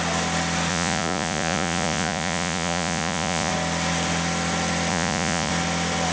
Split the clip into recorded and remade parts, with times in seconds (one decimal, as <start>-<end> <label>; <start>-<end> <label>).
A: 0.0-0.7 recorded; 0.7-3.5 remade; 3.5-4.9 recorded; 4.9-5.5 remade; 5.5-6.1 recorded